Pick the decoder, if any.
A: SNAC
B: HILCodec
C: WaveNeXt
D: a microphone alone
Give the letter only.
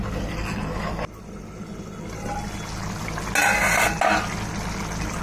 D